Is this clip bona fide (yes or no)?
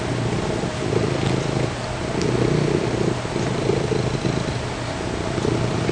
yes